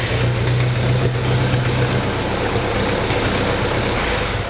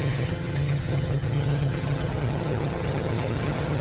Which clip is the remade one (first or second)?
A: second